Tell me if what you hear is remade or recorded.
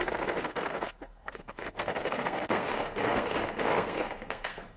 remade